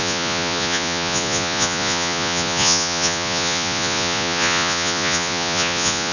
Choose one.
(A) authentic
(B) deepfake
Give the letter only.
B